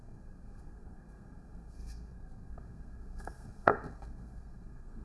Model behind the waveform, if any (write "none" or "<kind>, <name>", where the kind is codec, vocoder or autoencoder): codec, SNAC